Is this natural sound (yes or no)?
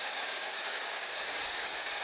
no